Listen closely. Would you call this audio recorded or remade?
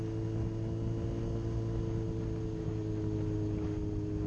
recorded